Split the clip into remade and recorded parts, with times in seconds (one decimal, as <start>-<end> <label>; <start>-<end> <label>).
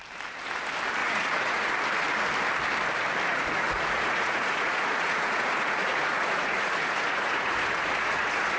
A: 0.0-1.0 recorded; 1.0-1.7 remade; 1.7-3.3 recorded; 3.3-8.6 remade